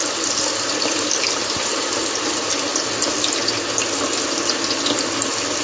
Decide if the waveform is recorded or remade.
recorded